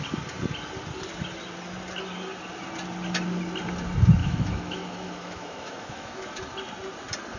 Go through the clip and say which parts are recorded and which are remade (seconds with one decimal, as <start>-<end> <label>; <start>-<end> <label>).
0.0-4.2 recorded; 4.2-6.4 remade; 6.4-7.4 recorded